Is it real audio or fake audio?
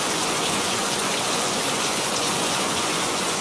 fake